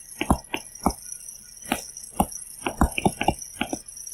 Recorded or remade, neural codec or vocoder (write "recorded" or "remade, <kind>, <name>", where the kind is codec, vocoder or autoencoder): recorded